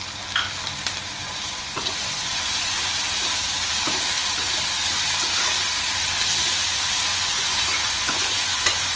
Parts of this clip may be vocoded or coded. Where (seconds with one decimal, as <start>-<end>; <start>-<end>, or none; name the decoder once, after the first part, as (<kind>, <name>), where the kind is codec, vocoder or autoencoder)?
1.2-2.8 (vocoder, Vocos); 7.1-9.0